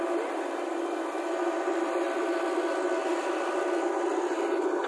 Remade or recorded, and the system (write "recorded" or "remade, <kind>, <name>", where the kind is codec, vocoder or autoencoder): recorded